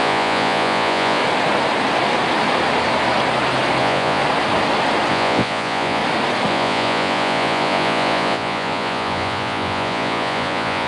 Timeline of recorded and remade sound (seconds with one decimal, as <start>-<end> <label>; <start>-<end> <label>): 0.0-1.2 remade; 1.2-3.8 recorded; 3.8-4.2 remade; 4.2-5.1 recorded; 5.1-6.0 remade; 6.0-6.5 recorded; 6.5-10.9 remade